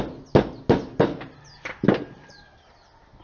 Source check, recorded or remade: recorded